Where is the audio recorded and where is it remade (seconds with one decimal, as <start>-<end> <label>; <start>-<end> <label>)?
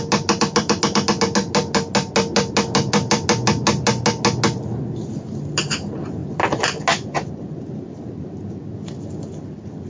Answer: 0.0-9.9 recorded